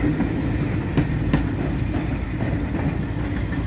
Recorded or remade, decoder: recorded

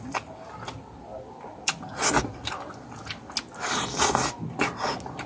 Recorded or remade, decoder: recorded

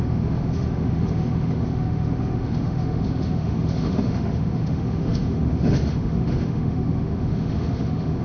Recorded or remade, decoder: remade, autoencoder, DAC-VAE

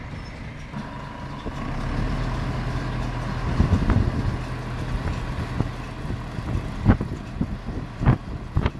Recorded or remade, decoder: recorded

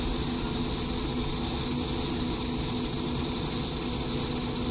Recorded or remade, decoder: recorded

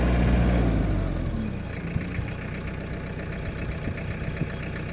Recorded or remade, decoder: recorded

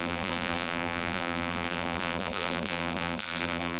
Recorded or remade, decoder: remade, vocoder, BigVGAN v2